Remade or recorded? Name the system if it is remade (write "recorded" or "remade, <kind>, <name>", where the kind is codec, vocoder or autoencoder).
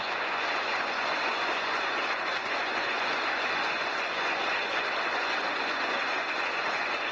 remade, vocoder, Vocos